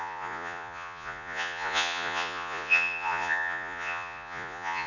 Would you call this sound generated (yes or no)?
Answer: yes